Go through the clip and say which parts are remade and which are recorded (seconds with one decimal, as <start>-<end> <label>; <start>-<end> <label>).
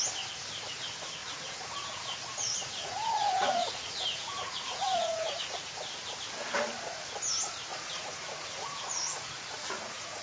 0.0-1.2 recorded; 1.2-5.7 remade; 5.7-7.7 recorded; 7.7-10.2 remade